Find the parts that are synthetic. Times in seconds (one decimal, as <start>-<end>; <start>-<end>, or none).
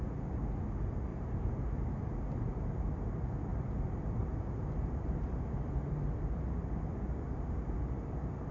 1.1-2.5; 3.5-5.6